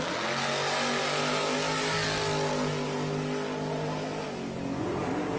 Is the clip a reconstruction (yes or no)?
no